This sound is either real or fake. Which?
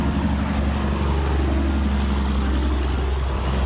real